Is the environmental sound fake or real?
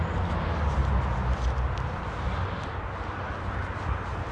real